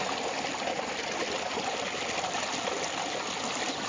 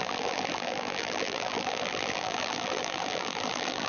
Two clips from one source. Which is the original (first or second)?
first